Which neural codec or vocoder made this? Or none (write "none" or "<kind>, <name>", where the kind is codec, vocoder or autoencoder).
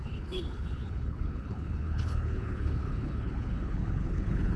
codec, HILCodec